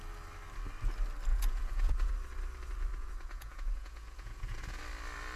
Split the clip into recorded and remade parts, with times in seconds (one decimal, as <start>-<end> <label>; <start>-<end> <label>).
0.0-1.3 recorded; 1.3-2.1 remade; 2.1-2.9 recorded; 2.9-4.8 remade; 4.8-5.4 recorded